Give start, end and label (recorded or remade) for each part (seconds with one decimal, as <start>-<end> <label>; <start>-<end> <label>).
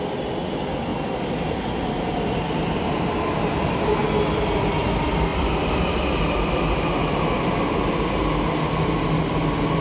0.0-9.8 recorded